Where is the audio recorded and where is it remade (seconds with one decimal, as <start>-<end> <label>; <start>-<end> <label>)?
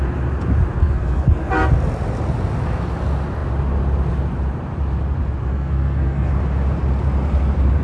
0.0-0.8 recorded; 0.8-1.5 remade; 1.5-5.5 recorded; 5.5-6.3 remade; 6.3-7.8 recorded